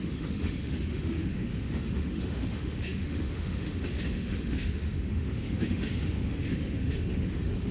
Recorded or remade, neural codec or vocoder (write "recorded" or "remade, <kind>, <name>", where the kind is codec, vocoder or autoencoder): remade, autoencoder, DAC-VAE